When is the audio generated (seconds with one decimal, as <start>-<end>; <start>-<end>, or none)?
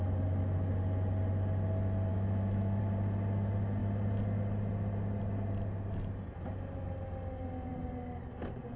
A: 2.1-2.8